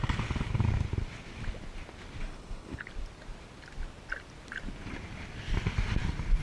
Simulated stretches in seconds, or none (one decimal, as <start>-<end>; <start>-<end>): 2.2-2.9